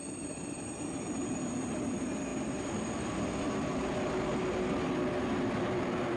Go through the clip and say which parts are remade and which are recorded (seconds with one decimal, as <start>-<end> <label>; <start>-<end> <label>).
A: 0.0-6.2 recorded